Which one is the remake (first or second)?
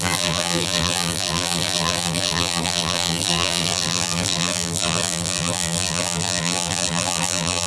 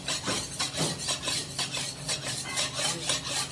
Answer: first